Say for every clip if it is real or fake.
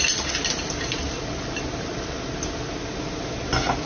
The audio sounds real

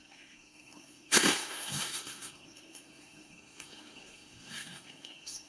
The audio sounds fake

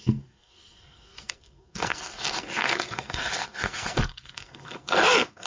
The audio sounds fake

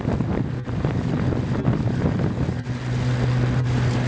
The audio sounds real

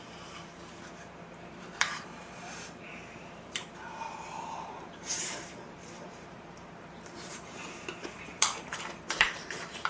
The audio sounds fake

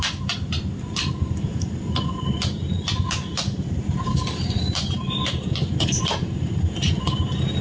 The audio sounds fake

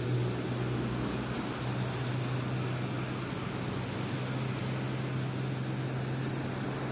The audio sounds real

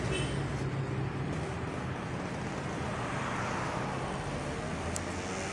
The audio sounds real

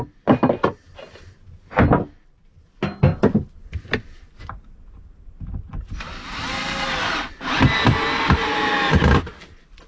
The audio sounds real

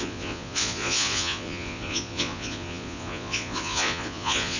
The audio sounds fake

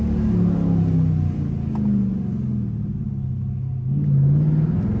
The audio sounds real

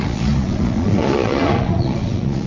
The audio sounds fake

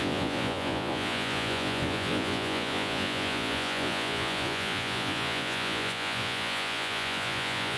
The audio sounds fake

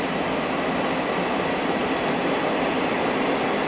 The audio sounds real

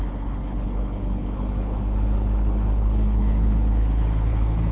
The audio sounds fake